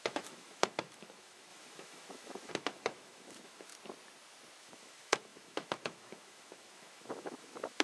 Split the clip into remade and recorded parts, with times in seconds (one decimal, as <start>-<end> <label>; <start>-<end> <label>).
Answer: 0.0-3.7 remade; 3.7-4.6 recorded; 4.6-7.8 remade